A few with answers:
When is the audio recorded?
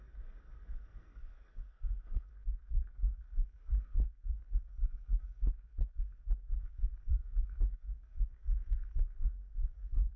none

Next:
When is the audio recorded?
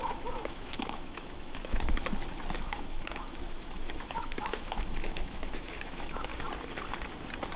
2.0-2.6; 6.3-7.6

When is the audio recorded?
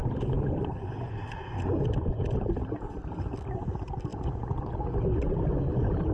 0.0-6.1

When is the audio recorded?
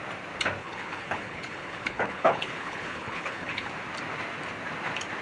0.0-0.6; 3.7-5.2